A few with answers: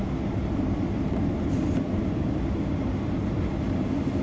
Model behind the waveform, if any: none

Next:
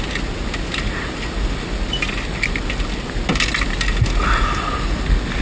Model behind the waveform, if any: none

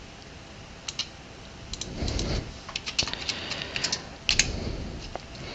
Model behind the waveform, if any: none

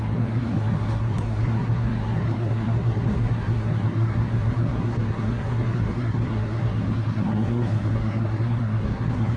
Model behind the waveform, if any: codec, SNAC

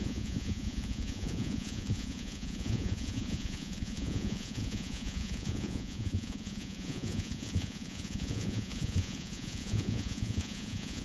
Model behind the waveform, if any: vocoder, Vocos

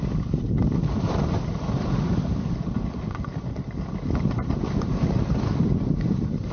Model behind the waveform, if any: none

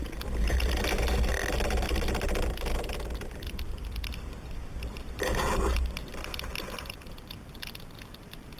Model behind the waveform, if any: none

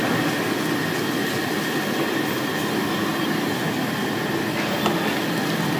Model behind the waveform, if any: none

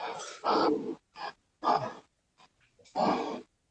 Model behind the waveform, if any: none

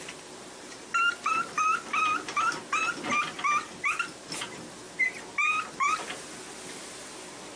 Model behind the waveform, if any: none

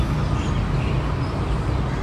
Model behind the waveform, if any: none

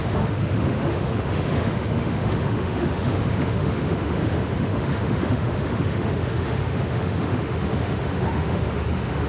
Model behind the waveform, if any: autoencoder, DAC-VAE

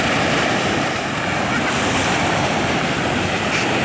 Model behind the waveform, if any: none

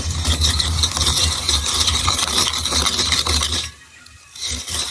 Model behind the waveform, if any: none